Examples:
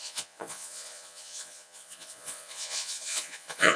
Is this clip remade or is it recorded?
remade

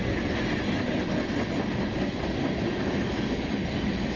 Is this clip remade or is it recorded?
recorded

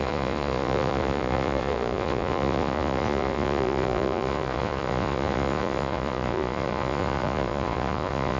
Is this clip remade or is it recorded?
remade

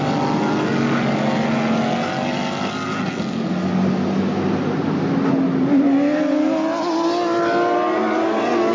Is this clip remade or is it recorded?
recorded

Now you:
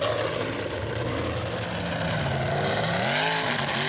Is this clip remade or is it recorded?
recorded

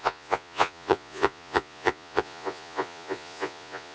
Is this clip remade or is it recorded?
remade